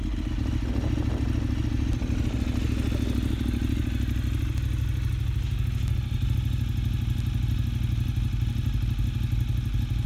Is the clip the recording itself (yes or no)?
yes